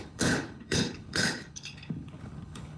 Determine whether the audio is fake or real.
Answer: fake